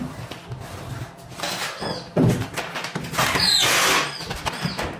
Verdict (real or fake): real